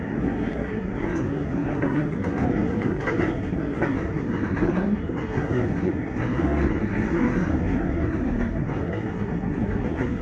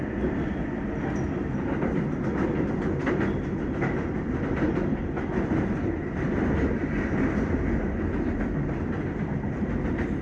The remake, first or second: first